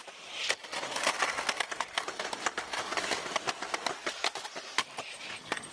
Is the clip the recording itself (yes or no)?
yes